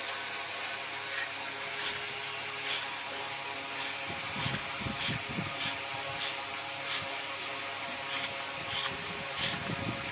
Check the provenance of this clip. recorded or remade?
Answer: recorded